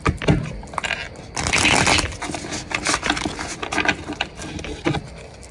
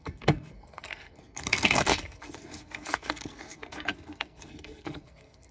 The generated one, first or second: second